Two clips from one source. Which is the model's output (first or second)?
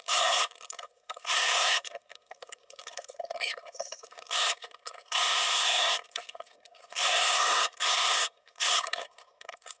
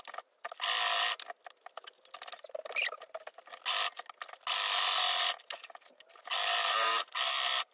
first